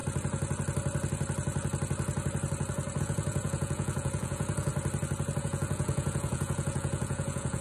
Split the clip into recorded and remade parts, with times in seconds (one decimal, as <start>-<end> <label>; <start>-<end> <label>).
0.0-3.0 recorded; 3.0-4.7 remade; 4.7-5.4 recorded; 5.4-7.6 remade